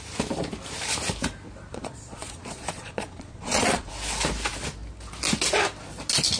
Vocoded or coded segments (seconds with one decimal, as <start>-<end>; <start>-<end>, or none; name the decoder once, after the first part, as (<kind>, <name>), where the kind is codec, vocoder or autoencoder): 1.7-3.9 (vocoder, Vocos)